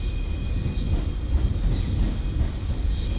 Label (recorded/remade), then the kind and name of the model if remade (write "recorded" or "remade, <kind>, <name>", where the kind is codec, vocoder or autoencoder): recorded